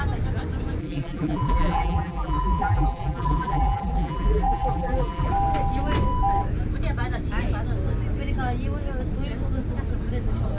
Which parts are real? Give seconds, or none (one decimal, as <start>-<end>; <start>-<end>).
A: 0.0-0.8; 5.3-10.6